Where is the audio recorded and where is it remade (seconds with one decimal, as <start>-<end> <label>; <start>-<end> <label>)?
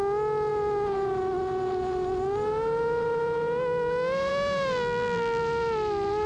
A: 0.0-4.7 recorded; 4.7-5.4 remade; 5.4-6.3 recorded